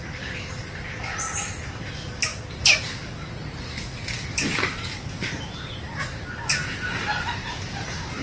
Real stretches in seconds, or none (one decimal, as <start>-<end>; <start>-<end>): 0.0-8.2